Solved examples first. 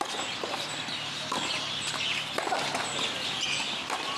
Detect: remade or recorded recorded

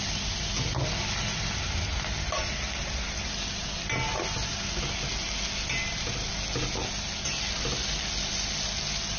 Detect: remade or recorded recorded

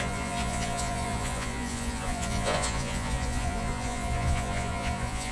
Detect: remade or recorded remade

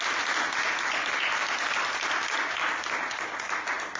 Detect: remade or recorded recorded